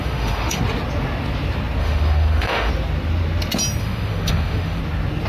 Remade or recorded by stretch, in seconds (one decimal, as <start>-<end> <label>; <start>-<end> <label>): 0.0-0.6 remade; 0.6-1.8 recorded; 1.8-2.7 remade; 2.7-3.8 recorded; 3.8-4.8 remade; 4.8-5.3 recorded